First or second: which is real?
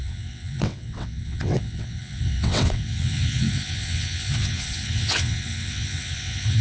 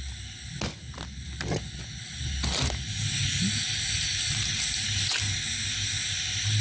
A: second